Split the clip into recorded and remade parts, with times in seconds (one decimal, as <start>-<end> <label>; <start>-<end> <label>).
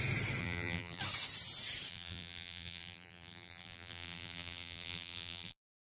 0.0-0.4 recorded; 0.4-1.0 remade; 1.0-1.9 recorded; 1.9-5.8 remade